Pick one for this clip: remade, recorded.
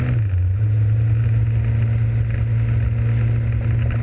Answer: recorded